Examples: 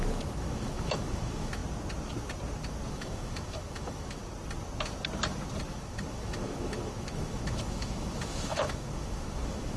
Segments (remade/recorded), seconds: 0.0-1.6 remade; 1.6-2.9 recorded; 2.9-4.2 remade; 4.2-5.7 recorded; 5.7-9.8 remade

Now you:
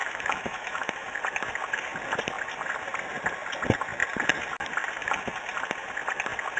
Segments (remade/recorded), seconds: 0.0-1.2 remade; 1.2-6.6 recorded